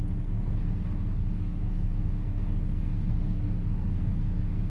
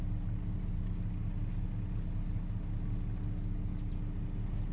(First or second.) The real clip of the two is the second